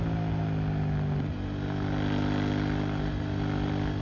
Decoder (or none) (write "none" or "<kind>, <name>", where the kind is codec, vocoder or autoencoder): none